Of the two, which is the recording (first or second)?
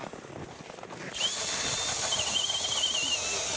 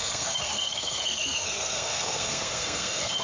first